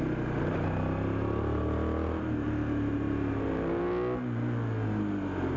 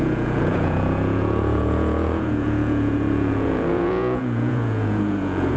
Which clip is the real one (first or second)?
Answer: first